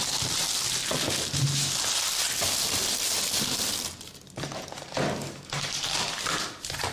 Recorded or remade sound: recorded